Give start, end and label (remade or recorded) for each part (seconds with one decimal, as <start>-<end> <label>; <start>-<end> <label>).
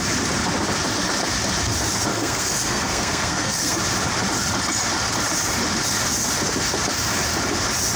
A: 0.0-2.1 recorded; 2.1-3.8 remade; 3.8-8.0 recorded